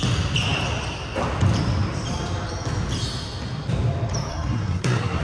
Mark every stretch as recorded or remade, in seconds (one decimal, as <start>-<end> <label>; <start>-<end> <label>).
0.0-4.3 recorded; 4.3-5.2 remade